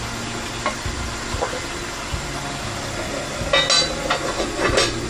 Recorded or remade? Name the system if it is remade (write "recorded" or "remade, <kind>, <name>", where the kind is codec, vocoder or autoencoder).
recorded